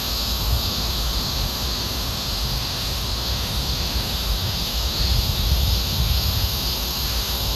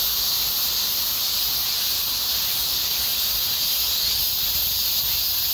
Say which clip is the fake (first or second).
first